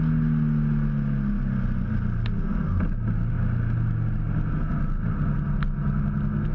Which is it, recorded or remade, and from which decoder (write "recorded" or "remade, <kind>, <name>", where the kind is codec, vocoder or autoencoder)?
recorded